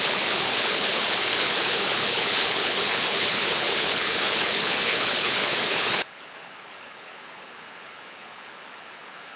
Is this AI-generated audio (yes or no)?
yes